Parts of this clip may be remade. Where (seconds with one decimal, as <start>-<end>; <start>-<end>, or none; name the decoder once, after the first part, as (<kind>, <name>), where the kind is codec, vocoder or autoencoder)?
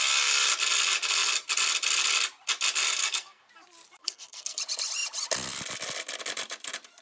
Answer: 3.0-3.5 (codec, SNAC); 4.0-4.6